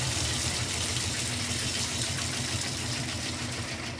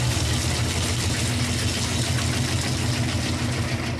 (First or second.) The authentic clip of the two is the second